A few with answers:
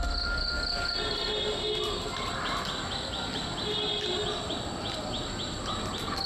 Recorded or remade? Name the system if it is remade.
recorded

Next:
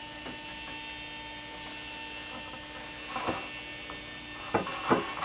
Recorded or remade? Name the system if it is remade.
recorded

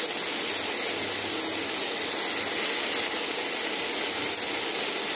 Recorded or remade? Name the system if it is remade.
recorded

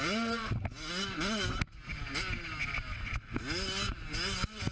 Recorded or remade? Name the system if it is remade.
recorded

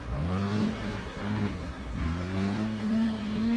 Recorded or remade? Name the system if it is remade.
remade, codec, SNAC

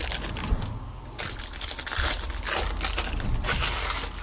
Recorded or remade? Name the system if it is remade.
recorded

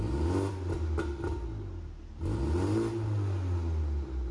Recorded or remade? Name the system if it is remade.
recorded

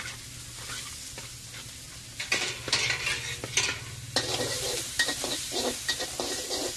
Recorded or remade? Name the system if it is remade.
recorded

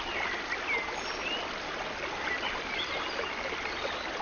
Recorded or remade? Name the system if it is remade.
recorded